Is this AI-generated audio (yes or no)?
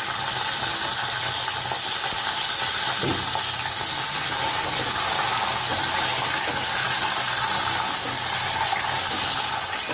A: no